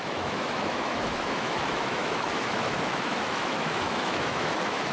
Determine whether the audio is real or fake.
fake